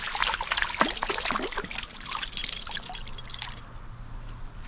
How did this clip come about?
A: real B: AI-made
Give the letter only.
A